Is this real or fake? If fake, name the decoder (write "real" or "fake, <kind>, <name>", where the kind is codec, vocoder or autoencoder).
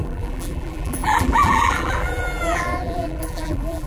fake, vocoder, BigVGAN v2